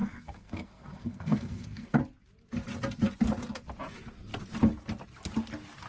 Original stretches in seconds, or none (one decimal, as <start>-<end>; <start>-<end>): 2.0-5.9